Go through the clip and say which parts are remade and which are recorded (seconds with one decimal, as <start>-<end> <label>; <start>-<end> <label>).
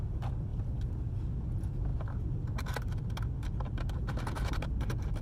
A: 0.0-5.2 recorded